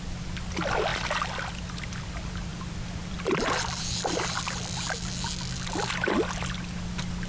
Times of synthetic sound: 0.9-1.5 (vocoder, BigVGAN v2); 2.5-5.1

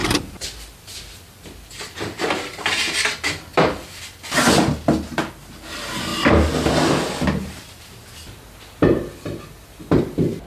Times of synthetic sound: none

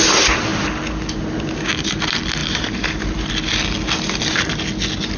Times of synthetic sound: 2.4-3.3 (vocoder, BigVGAN v2)

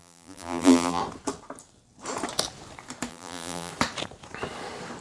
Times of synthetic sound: 0.0-1.0 (vocoder, BigVGAN v2); 3.1-3.7

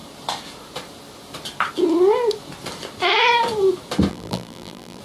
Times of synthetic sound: 4.1-5.0 (vocoder, BigVGAN v2)